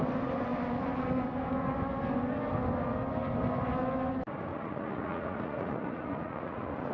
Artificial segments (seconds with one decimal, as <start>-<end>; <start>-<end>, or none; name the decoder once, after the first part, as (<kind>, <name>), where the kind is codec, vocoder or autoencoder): 4.5-6.9 (vocoder, Vocos)